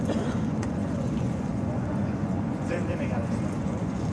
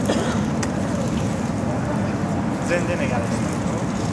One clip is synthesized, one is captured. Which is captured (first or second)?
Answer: second